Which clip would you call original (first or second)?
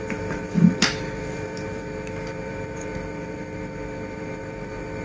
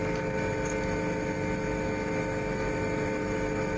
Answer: second